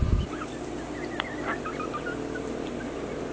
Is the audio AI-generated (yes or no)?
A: no